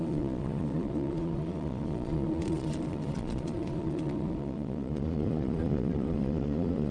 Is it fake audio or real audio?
fake